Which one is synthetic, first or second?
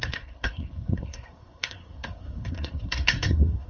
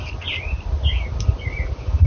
first